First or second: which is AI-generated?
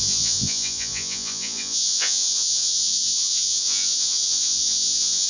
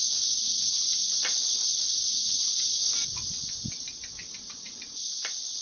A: first